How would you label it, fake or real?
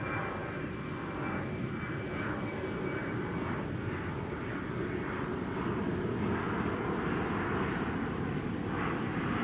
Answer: real